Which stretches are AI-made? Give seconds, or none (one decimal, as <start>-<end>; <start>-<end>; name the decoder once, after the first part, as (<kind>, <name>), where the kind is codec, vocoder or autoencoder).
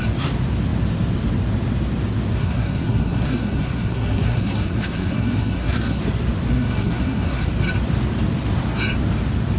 2.4-6.0 (codec, SNAC); 6.5-7.5